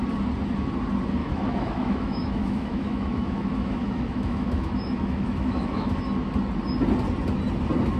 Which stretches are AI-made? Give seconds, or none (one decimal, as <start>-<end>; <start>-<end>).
1.2-6.0